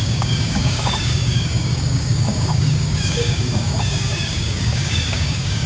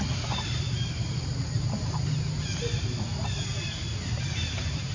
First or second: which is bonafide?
second